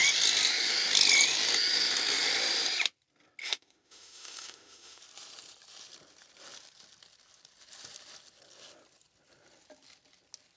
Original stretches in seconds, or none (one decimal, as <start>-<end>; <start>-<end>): 0.0-3.4; 5.0-10.6